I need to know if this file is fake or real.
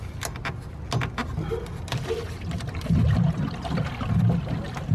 real